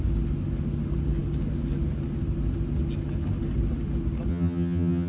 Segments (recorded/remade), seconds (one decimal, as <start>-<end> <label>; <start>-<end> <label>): 0.0-4.3 recorded; 4.3-5.1 remade